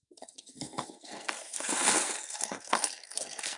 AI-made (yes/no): yes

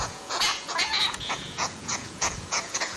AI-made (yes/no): yes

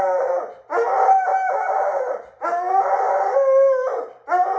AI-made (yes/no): no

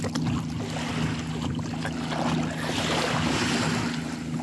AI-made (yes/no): no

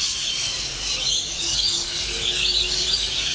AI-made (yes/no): yes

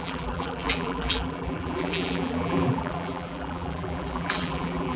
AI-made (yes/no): yes